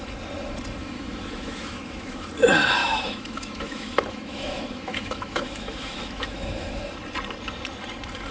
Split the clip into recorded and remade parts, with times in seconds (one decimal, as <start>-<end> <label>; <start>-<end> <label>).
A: 0.0-0.8 recorded; 0.8-2.3 remade; 2.3-2.8 recorded; 2.8-6.8 remade; 6.8-8.3 recorded